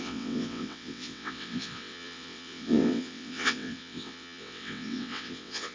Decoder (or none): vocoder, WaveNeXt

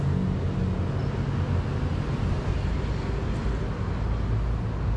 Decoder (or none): none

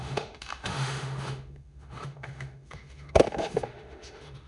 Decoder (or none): autoencoder, DAC-VAE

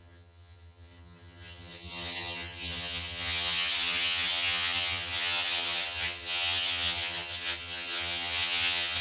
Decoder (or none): vocoder, HiFi-GAN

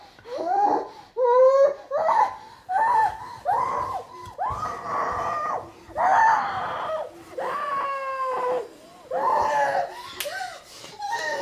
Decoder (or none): none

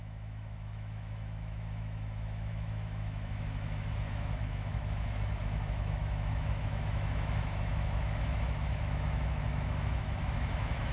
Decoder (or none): autoencoder, DAC-VAE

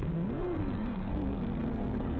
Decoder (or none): codec, SNAC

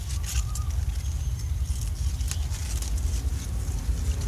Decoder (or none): none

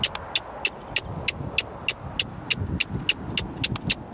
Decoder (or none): none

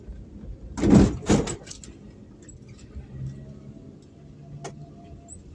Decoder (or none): none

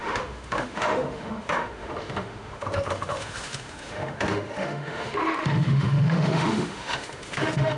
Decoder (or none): autoencoder, DAC-VAE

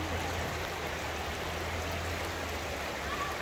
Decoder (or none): none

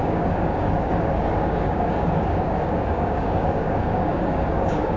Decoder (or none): codec, DAC